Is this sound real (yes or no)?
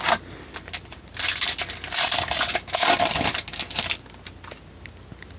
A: yes